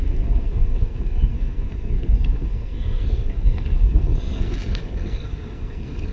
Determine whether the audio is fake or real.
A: fake